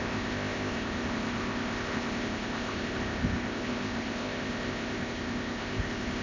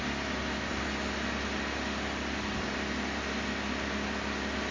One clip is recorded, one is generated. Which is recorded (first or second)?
second